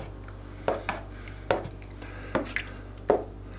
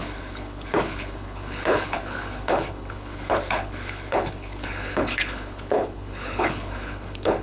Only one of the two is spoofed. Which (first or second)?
second